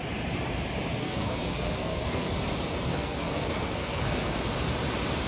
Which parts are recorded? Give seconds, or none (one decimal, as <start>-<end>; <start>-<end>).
0.0-1.0; 2.3-2.9; 4.3-5.3

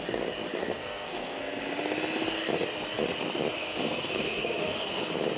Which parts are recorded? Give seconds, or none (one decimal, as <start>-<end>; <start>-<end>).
0.0-0.6; 1.6-3.6; 5.0-5.4

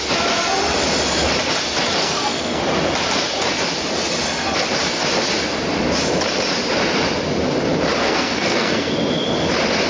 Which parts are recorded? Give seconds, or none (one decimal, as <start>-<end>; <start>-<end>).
0.0-2.0; 2.6-8.0; 8.9-9.9

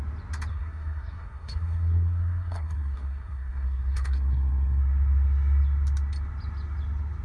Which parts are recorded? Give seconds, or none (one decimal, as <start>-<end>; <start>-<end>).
0.0-0.5; 4.8-7.2

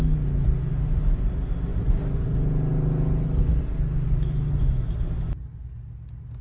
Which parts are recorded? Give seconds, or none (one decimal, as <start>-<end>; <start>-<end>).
0.0-6.4